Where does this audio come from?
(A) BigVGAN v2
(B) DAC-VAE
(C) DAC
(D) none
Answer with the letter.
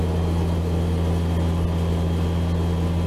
D